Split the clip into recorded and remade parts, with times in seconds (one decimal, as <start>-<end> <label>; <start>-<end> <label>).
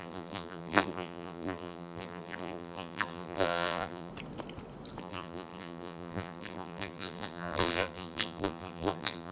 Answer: 0.0-4.1 remade; 4.1-5.0 recorded; 5.0-9.3 remade